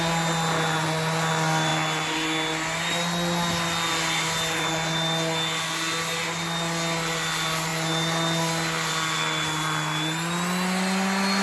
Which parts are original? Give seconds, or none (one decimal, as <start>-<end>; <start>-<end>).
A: 0.0-11.4